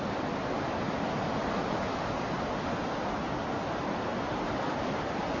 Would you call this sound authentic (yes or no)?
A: yes